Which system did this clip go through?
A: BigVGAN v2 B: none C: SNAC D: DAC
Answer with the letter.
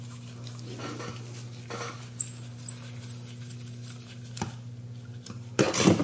B